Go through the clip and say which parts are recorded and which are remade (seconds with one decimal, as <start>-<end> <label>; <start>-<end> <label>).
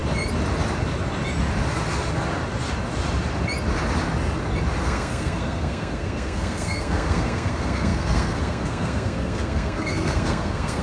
0.0-4.8 recorded; 4.8-10.8 remade